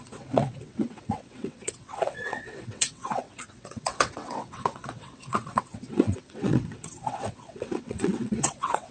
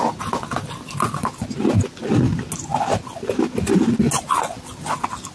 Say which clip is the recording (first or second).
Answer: second